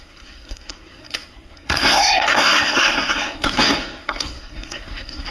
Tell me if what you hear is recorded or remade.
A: remade